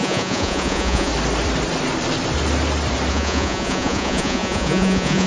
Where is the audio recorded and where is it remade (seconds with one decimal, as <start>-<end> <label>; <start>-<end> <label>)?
0.0-1.1 remade; 1.1-3.1 recorded; 3.1-5.3 remade

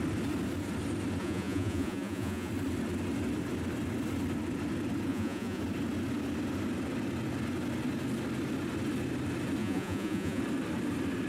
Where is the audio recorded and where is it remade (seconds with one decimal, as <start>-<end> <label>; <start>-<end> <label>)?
0.0-1.2 recorded; 1.2-2.5 remade; 2.5-5.1 recorded; 5.1-5.6 remade; 5.6-9.6 recorded; 9.6-10.4 remade; 10.4-11.3 recorded

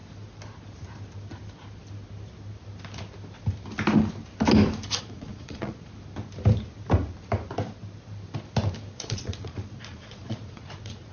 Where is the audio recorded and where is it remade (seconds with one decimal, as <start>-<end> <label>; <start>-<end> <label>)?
0.0-5.0 recorded; 5.0-5.9 remade; 5.9-8.9 recorded; 8.9-11.1 remade

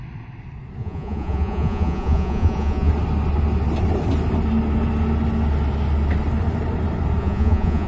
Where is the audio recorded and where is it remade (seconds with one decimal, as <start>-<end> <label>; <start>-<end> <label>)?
0.0-0.8 recorded; 0.8-2.9 remade; 2.9-7.2 recorded; 7.2-7.9 remade